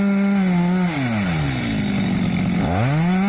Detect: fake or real real